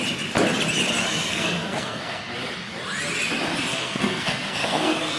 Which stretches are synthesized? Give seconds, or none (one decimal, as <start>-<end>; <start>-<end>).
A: 1.3-2.3; 3.7-5.2